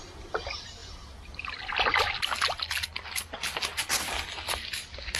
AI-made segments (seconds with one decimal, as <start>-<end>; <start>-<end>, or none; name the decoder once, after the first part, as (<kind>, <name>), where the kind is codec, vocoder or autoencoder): none